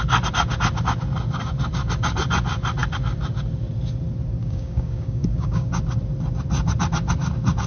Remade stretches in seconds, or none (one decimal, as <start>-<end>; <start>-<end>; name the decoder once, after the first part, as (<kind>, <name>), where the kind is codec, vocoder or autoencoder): 4.4-5.7 (codec, DAC)